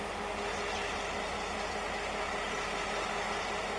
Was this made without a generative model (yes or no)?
yes